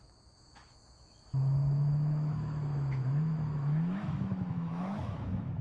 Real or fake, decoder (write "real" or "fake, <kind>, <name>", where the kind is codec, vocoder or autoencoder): fake, autoencoder, DAC-VAE